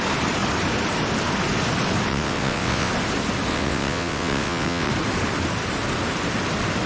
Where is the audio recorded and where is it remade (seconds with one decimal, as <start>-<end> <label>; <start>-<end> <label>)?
0.0-2.1 recorded; 2.1-2.9 remade; 2.9-3.5 recorded; 3.5-4.9 remade; 4.9-6.9 recorded